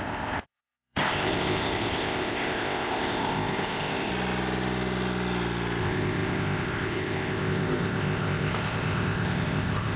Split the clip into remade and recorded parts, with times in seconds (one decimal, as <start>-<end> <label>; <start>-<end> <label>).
0.0-4.1 remade; 4.1-5.8 recorded; 5.8-10.0 remade